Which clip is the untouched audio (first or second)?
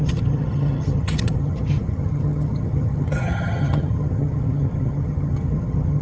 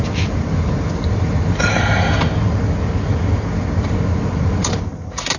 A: second